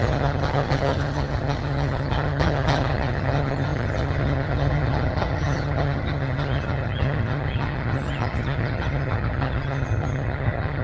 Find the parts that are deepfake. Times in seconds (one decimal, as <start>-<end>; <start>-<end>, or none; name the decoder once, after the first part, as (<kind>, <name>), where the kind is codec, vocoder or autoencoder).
0.0-10.8 (vocoder, HiFi-GAN)

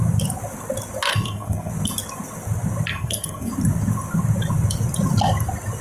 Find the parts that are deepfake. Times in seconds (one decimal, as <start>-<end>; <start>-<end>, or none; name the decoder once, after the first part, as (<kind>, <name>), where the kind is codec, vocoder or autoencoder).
1.1-1.7 (codec, SNAC); 2.9-3.5

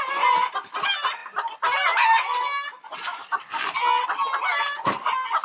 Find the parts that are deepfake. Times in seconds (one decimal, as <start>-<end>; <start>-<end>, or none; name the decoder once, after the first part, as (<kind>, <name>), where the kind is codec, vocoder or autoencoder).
none

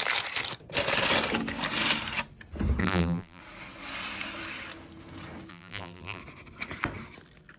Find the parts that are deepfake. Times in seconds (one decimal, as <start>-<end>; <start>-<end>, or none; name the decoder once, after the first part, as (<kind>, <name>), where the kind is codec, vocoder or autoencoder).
2.8-3.4 (vocoder, BigVGAN v2); 5.5-6.2

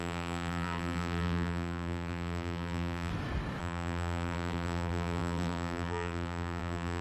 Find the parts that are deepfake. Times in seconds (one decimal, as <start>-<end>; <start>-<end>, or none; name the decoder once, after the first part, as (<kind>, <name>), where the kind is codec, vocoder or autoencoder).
0.0-3.1 (vocoder, BigVGAN v2); 3.6-7.0

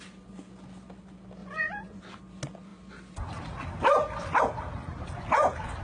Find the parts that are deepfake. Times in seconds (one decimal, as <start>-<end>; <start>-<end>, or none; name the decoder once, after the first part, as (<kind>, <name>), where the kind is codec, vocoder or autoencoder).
1.4-2.0 (vocoder, Vocos)